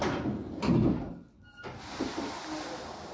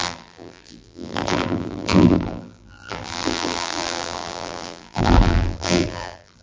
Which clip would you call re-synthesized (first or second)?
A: second